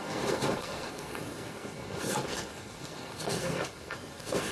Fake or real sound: fake